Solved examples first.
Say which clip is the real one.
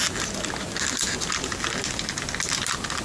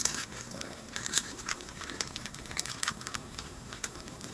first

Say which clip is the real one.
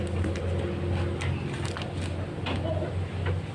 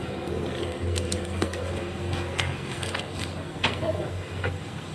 first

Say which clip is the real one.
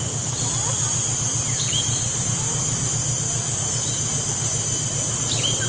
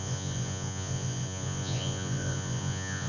first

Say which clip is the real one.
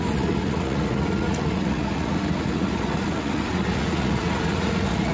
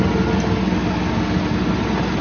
second